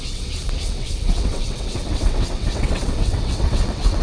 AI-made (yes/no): yes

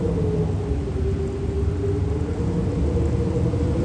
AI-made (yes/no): no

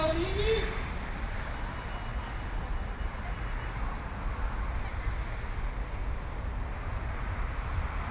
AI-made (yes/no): no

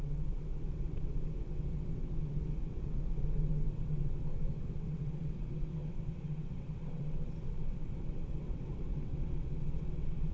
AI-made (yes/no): yes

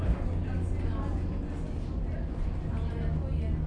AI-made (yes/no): no